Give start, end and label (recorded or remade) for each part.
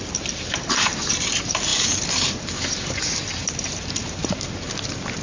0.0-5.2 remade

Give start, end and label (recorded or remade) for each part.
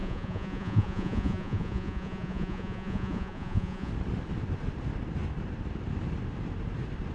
0.0-3.9 remade; 3.9-7.1 recorded